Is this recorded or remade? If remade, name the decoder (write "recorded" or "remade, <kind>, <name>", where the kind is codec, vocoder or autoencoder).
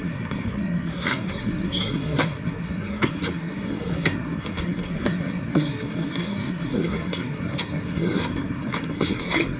remade, codec, SNAC